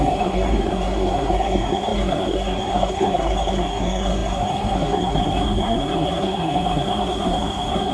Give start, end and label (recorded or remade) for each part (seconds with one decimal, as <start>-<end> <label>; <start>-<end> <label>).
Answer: 0.0-7.9 remade